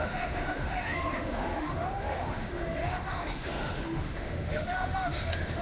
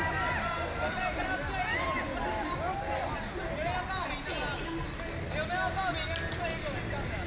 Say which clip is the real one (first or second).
second